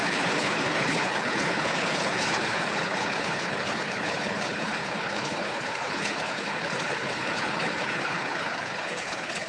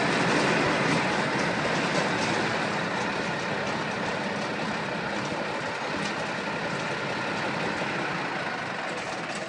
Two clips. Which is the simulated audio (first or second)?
first